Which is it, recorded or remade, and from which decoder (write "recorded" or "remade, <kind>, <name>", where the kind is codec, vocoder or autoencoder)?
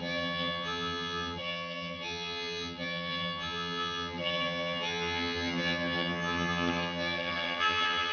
remade, vocoder, HiFi-GAN